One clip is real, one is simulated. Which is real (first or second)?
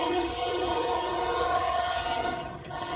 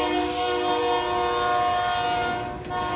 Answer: second